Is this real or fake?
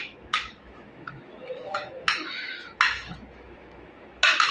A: fake